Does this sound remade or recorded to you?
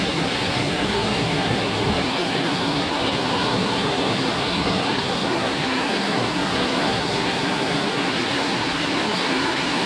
remade